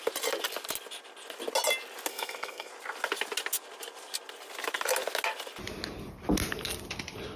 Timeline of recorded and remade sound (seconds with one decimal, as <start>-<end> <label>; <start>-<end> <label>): 0.0-2.1 recorded; 2.1-2.7 remade; 2.7-7.4 recorded